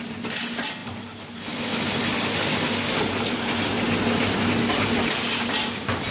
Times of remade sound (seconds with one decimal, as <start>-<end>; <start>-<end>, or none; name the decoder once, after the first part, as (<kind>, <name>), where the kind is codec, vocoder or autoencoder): none